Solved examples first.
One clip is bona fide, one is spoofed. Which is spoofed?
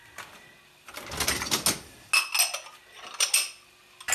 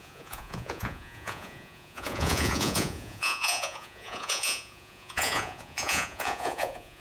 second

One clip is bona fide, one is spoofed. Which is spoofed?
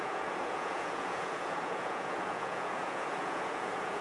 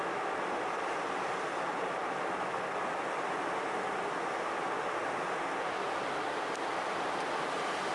first